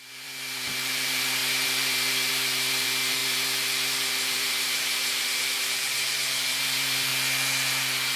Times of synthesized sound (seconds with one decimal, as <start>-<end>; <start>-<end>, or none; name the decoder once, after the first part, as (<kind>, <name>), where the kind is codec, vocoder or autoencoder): 0.0-7.1 (vocoder, BigVGAN v2)